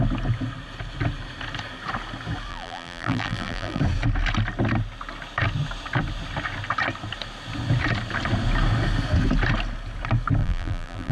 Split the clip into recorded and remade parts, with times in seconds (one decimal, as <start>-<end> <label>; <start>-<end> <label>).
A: 0.0-2.5 recorded; 2.5-3.8 remade; 3.8-10.4 recorded; 10.4-11.1 remade